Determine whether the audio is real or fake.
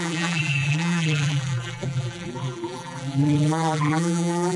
fake